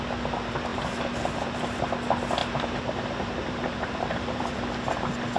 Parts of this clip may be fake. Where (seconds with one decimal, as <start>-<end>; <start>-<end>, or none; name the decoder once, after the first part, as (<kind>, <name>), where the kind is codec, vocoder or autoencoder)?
0.7-1.9 (vocoder, BigVGAN v2); 2.4-4.4